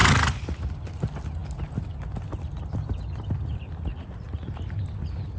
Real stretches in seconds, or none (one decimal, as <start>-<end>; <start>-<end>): 0.0-3.9; 4.5-5.4